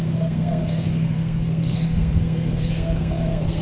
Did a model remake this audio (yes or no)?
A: yes